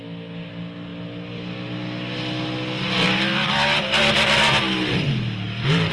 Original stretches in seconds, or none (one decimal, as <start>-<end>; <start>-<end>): 0.0-5.9